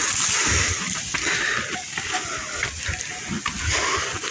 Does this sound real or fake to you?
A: real